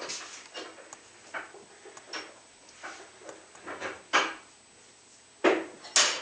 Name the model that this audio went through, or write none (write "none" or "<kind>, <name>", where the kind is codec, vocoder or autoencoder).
none